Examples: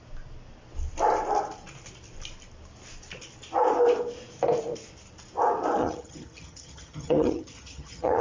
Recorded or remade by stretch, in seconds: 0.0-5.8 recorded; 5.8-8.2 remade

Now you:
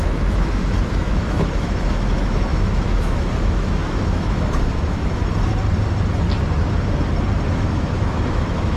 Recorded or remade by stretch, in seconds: 0.0-5.2 remade; 5.2-7.6 recorded; 7.6-8.8 remade

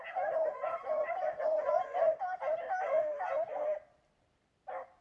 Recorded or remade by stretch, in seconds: 0.0-0.5 recorded; 0.5-2.0 remade; 2.0-5.0 recorded

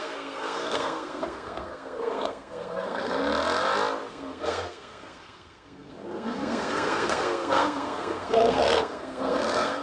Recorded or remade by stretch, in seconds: 0.0-3.2 remade; 3.2-4.1 recorded; 4.1-9.8 remade

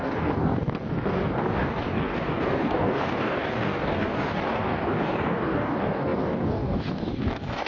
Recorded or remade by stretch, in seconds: 0.0-7.7 remade